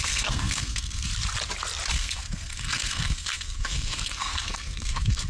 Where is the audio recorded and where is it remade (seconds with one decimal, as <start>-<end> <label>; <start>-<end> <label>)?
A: 0.0-1.1 remade; 1.1-1.9 recorded; 1.9-5.3 remade